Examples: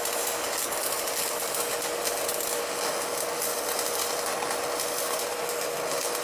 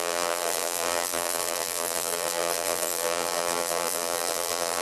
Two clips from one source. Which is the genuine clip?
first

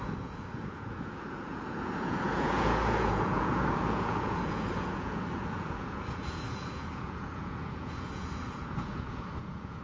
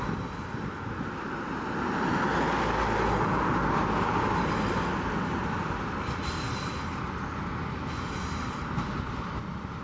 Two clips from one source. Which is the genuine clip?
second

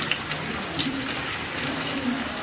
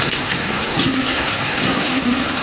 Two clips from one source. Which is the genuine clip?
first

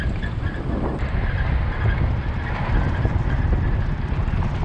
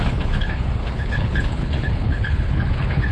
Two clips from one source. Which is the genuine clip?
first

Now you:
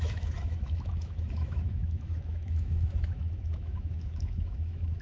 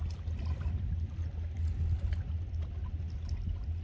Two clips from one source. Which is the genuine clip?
second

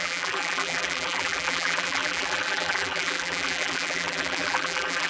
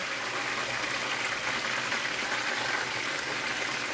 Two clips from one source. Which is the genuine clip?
second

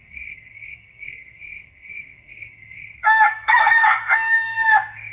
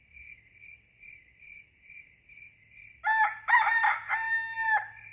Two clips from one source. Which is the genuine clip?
second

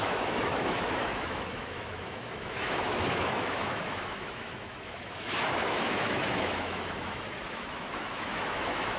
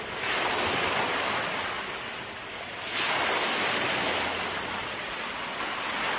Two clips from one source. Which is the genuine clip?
second